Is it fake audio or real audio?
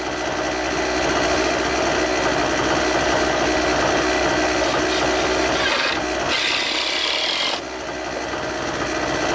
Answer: real